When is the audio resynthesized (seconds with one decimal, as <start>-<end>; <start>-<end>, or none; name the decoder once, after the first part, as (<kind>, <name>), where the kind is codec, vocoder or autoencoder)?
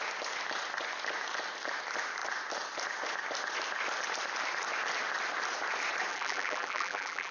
6.1-7.3 (vocoder, BigVGAN v2)